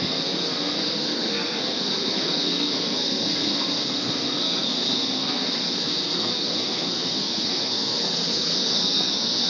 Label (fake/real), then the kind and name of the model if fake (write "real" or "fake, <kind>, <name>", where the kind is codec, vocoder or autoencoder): fake, codec, SNAC